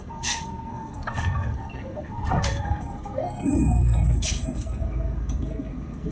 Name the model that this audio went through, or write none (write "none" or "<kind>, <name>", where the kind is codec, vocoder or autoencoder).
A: codec, SNAC